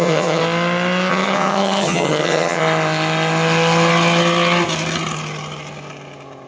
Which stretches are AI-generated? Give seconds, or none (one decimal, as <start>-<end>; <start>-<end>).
0.0-0.4; 1.1-2.6